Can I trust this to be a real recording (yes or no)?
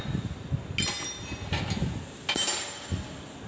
yes